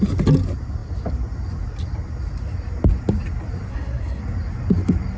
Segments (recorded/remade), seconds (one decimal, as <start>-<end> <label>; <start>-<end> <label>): 0.0-3.7 recorded; 3.7-4.2 remade; 4.2-5.2 recorded